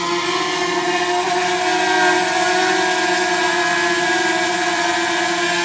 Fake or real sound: real